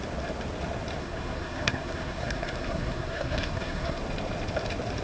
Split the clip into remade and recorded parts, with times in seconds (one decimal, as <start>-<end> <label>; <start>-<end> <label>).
0.0-1.0 recorded; 1.0-4.0 remade; 4.0-5.0 recorded